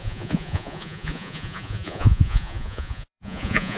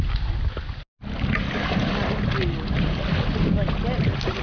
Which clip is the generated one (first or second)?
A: first